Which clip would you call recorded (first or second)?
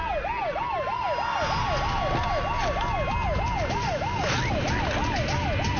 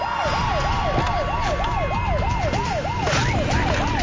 first